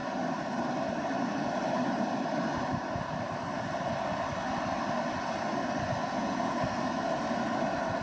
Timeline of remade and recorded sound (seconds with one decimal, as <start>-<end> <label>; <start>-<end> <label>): 0.0-6.0 recorded; 6.0-6.6 remade; 6.6-8.0 recorded